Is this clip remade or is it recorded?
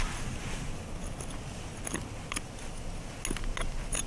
recorded